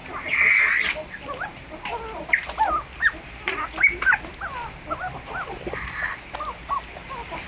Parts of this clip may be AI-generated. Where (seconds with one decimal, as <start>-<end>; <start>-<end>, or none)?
none